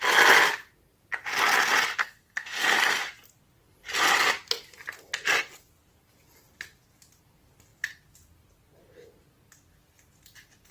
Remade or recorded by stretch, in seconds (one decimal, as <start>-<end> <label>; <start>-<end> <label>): 0.0-2.0 recorded; 2.0-3.0 remade; 3.0-10.7 recorded